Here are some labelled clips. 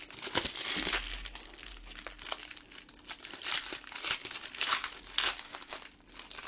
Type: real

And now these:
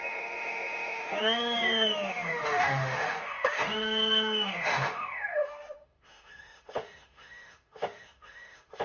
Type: fake